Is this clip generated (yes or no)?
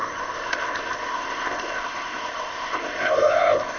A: yes